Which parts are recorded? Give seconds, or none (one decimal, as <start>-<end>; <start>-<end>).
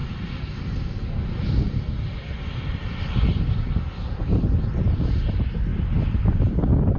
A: 0.0-7.0